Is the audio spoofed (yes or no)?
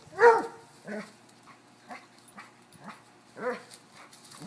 no